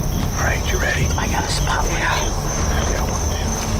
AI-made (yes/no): no